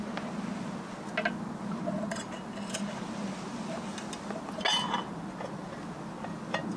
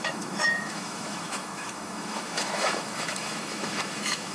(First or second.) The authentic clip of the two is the first